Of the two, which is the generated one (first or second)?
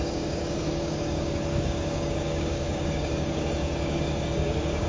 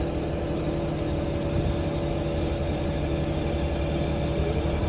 first